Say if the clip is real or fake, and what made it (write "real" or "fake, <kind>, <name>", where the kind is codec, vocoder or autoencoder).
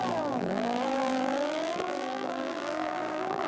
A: fake, vocoder, BigVGAN v2